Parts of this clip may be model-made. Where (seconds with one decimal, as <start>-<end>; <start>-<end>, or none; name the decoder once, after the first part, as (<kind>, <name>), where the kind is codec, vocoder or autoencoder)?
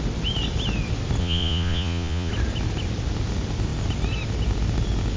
1.2-2.3 (vocoder, Vocos)